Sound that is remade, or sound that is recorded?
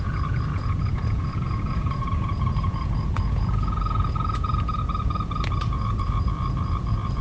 remade